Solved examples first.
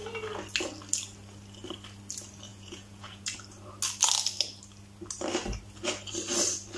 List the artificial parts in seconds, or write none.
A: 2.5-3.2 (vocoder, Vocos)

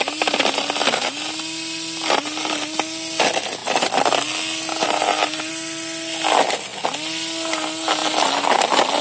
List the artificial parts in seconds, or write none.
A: none

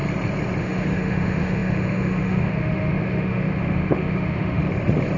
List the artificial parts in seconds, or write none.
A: 0.6-4.6 (autoencoder, DAC-VAE)